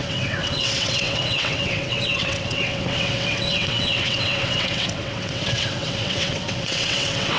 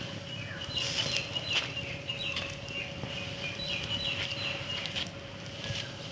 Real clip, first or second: second